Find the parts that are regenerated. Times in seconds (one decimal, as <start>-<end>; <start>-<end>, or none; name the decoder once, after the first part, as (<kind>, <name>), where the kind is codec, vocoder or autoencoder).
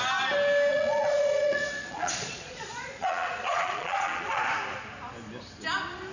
0.7-4.4 (vocoder, Vocos)